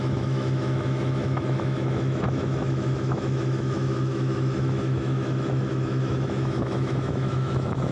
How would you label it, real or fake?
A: fake